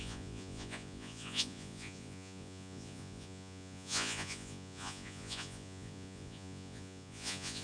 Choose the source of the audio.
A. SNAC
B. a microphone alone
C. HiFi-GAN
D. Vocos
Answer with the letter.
D